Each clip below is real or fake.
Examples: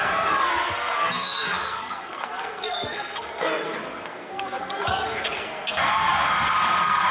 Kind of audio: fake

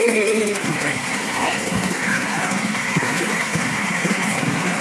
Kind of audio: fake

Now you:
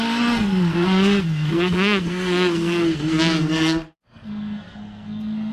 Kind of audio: fake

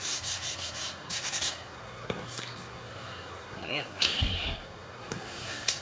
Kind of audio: fake